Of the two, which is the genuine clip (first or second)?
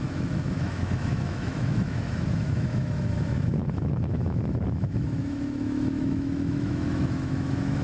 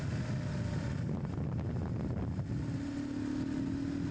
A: second